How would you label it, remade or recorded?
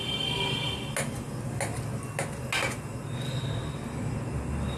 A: recorded